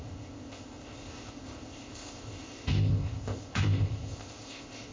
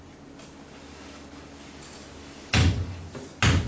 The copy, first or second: first